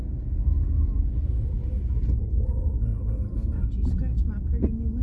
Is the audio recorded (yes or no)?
yes